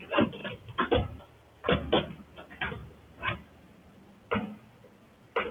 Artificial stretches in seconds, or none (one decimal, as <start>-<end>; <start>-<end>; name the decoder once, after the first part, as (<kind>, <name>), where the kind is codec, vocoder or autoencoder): 0.4-1.2 (vocoder, BigVGAN v2); 2.8-3.6